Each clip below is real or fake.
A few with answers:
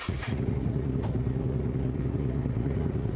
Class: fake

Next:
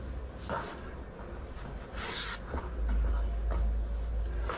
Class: real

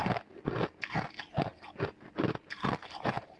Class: real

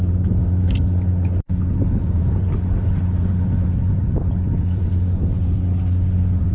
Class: real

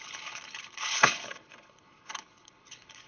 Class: fake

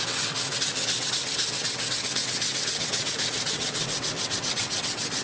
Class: fake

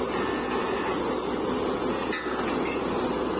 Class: real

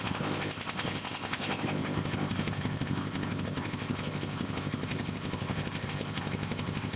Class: fake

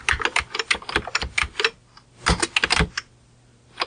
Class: real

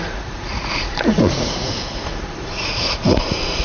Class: fake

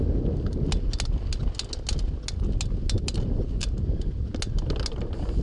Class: real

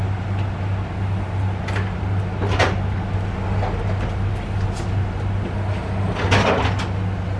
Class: real